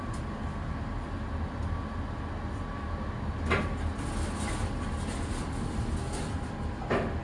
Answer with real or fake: real